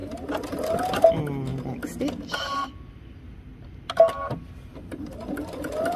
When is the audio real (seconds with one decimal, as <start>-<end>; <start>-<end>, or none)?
0.0-6.0